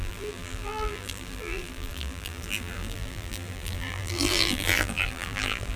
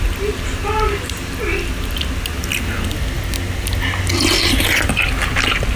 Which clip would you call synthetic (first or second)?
first